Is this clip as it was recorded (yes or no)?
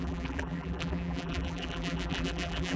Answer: no